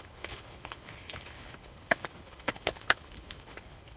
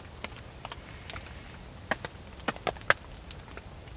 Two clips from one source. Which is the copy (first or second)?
first